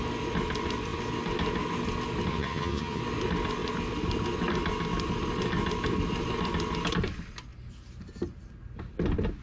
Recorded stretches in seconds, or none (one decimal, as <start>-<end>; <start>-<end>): 0.0-2.3; 3.0-9.4